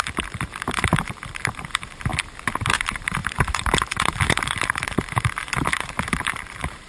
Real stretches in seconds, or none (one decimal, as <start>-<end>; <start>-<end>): 2.1-2.7